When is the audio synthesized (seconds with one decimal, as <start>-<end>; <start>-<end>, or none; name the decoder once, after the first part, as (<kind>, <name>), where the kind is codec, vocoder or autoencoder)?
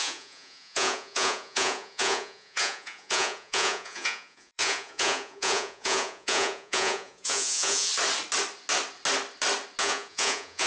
0.0-7.9 (vocoder, Vocos); 9.8-10.7